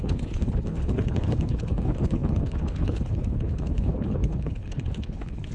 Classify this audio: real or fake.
fake